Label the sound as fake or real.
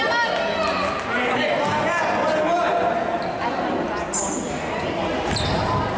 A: real